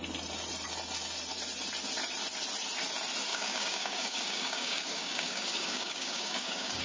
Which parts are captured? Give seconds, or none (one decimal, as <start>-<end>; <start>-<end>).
0.0-3.3